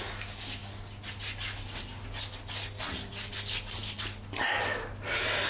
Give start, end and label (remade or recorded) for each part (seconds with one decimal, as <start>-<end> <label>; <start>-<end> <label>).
0.0-5.5 recorded